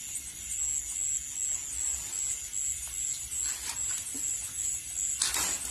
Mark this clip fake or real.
real